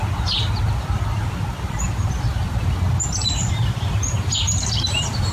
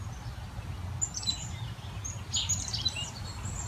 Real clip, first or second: second